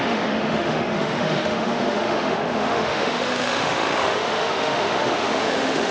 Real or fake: fake